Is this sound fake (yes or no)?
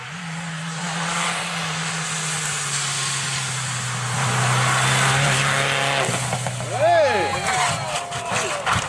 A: no